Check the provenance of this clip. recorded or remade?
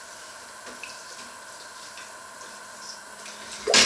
recorded